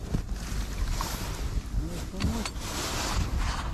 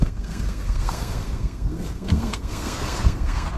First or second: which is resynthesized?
second